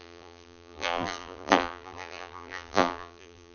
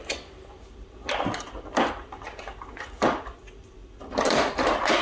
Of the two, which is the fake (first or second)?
first